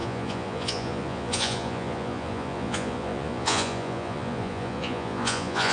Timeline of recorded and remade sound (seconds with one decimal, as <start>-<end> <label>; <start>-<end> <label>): 0.0-5.7 remade